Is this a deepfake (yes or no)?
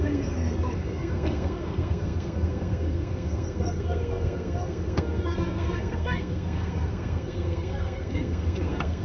yes